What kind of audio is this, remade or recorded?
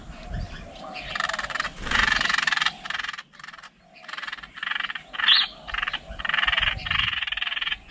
recorded